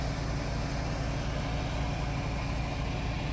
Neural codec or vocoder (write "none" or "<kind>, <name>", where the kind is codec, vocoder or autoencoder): none